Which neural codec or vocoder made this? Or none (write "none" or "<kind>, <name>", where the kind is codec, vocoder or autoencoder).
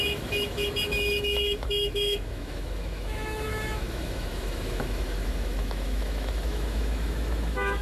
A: autoencoder, DAC-VAE